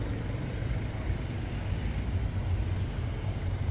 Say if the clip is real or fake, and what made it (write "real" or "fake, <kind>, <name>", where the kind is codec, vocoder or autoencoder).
real